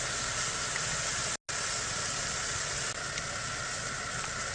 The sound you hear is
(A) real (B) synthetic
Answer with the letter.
A